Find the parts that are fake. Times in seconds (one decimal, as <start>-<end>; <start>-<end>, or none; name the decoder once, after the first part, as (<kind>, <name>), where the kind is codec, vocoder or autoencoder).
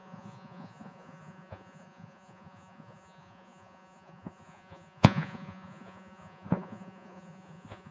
0.0-7.9 (vocoder, Vocos)